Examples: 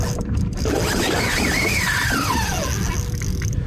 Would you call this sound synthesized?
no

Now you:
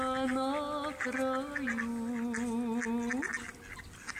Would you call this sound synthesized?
no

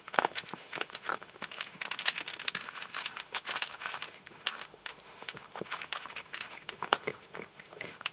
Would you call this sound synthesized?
yes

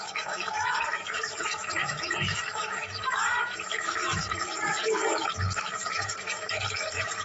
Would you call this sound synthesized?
yes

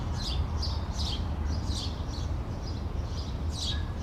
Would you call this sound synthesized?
no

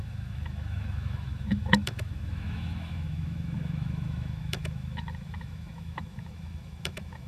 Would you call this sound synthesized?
yes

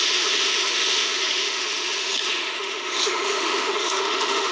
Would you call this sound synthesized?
yes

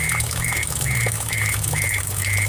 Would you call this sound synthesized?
yes